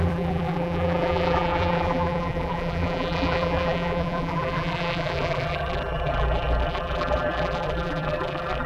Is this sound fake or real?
fake